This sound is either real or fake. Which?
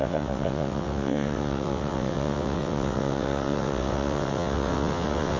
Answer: fake